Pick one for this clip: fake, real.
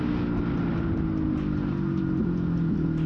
real